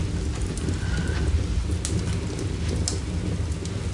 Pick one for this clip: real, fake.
real